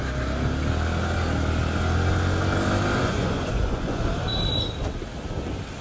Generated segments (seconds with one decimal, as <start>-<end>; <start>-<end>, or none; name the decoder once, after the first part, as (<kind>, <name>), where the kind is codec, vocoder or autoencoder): 3.0-4.0 (vocoder, Vocos)